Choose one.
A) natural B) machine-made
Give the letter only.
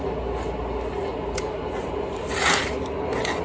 A